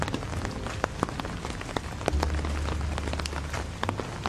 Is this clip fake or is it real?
real